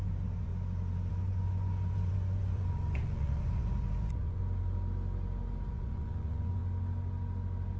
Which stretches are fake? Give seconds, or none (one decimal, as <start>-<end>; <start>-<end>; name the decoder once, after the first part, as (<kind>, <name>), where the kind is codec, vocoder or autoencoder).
0.0-0.5 (vocoder, Vocos); 1.1-4.4; 5.7-6.6